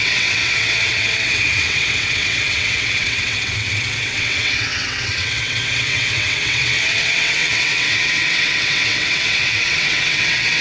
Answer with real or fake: fake